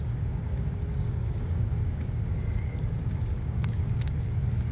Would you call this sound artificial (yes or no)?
yes